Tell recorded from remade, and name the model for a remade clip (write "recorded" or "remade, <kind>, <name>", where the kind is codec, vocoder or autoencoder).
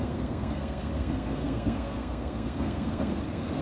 remade, codec, SNAC